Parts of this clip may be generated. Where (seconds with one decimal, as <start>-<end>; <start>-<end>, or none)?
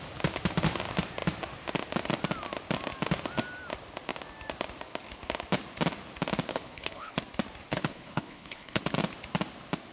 6.5-7.2; 7.7-8.8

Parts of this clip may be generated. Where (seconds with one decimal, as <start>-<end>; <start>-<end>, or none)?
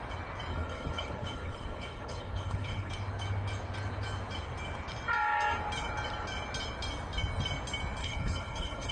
0.5-2.9; 8.0-8.9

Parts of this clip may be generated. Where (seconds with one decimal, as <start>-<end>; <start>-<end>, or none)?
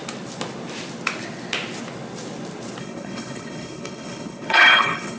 2.8-5.2